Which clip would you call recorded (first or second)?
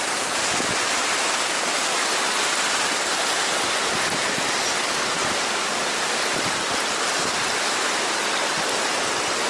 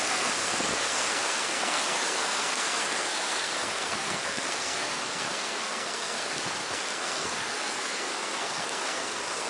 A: first